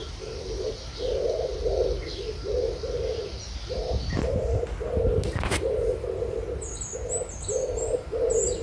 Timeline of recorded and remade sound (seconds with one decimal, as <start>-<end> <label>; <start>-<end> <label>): 0.0-8.6 recorded